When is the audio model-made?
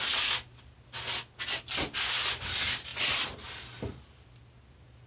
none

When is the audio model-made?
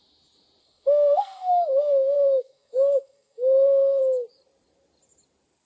0.6-4.0 (codec, SNAC)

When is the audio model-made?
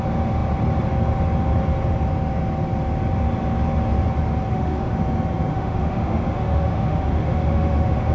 4.5-5.0 (autoencoder, DAC-VAE); 5.5-8.1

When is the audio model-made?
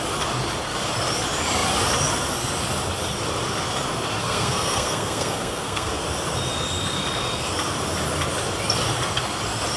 4.2-5.9 (codec, SNAC)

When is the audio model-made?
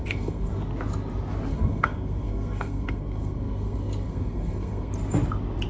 0.0-0.5 (codec, SNAC); 1.5-4.9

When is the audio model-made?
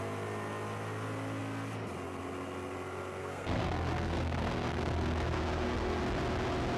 3.2-6.0 (codec, SNAC)